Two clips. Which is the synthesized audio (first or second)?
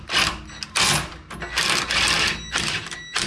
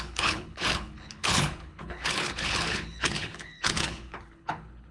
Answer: second